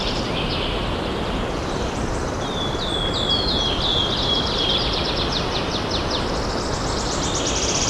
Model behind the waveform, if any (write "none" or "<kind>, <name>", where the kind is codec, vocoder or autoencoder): none